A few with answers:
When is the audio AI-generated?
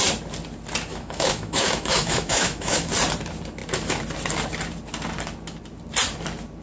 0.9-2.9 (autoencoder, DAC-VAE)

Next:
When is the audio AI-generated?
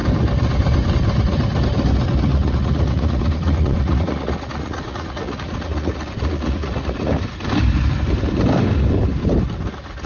2.3-7.1 (vocoder, Vocos)